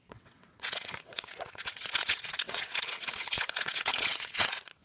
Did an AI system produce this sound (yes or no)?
yes